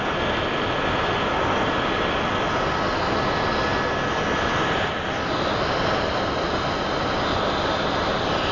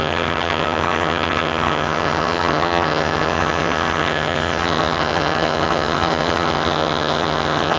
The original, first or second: first